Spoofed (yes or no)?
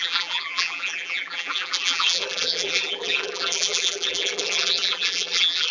yes